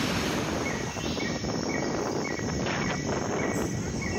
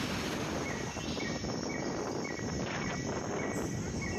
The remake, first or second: first